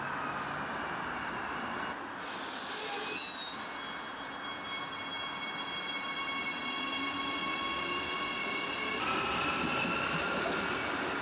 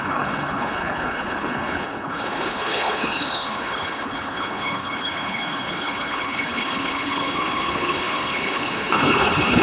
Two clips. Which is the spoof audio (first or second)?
second